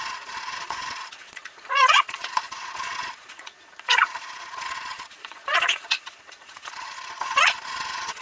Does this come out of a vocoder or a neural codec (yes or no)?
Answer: yes